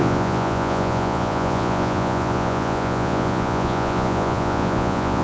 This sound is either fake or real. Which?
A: fake